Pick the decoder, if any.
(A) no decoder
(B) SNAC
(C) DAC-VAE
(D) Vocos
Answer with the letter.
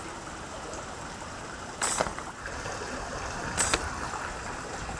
A